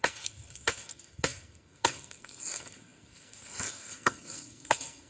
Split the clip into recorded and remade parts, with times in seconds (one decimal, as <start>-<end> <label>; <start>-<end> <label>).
0.0-5.1 remade

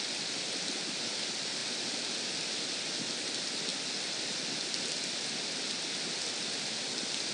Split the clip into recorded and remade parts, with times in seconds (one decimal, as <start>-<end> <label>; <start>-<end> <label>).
0.0-7.3 recorded

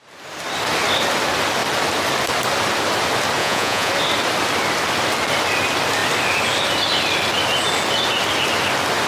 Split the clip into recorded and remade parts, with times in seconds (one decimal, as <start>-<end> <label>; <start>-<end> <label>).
0.0-3.4 recorded; 3.4-3.9 remade; 3.9-9.1 recorded

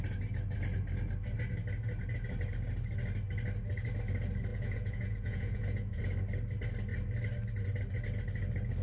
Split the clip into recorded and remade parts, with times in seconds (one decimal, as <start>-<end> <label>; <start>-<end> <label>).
0.0-4.5 recorded; 4.5-6.0 remade; 6.0-8.8 recorded

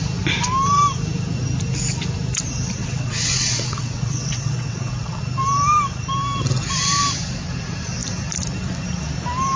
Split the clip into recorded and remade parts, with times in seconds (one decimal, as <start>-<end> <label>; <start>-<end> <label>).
0.0-2.8 recorded; 2.8-5.2 remade; 5.2-9.6 recorded